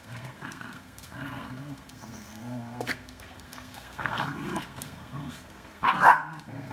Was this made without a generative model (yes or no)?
no